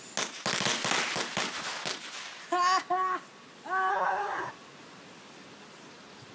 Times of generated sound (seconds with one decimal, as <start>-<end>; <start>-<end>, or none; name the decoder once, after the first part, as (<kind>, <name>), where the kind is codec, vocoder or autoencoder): 3.9-4.5 (codec, SNAC)